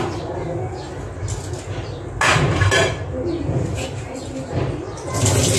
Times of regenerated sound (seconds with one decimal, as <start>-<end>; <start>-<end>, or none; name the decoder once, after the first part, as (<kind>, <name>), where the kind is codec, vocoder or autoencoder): 2.3-4.8 (vocoder, BigVGAN v2)